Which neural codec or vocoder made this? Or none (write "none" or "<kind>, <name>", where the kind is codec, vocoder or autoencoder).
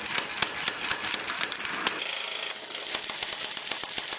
none